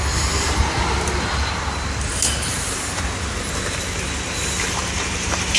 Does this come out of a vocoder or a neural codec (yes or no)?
no